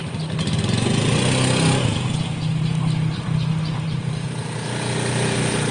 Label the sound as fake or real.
real